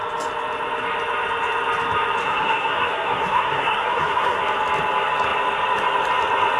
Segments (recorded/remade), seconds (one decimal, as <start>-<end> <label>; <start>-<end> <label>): 0.0-2.2 recorded; 2.2-4.4 remade; 4.4-6.6 recorded